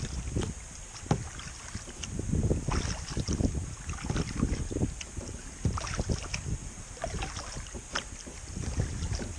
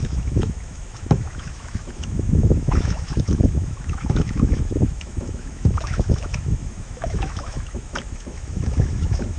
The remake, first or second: second